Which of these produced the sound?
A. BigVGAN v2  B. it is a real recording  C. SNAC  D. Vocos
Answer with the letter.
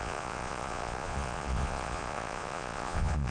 D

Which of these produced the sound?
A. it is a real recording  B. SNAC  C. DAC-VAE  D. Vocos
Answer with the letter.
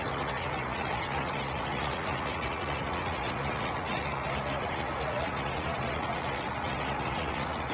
D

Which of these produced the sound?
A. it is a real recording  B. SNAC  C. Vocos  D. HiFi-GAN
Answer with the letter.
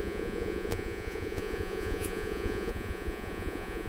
C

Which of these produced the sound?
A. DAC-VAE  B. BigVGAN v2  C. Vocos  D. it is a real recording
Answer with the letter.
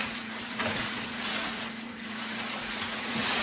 C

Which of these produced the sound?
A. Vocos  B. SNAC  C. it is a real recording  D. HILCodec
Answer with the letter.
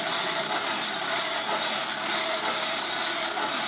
C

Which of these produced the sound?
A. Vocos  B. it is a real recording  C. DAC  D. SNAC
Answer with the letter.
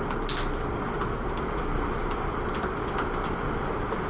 B